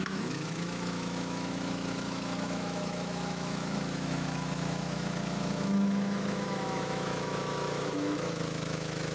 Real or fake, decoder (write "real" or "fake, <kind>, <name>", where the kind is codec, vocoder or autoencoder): fake, autoencoder, DAC-VAE